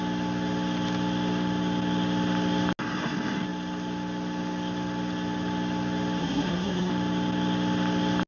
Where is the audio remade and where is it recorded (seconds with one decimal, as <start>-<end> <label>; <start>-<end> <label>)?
0.0-6.2 recorded; 6.2-6.9 remade; 6.9-8.3 recorded